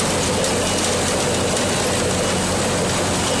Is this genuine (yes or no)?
yes